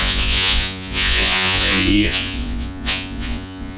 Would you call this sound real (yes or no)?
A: no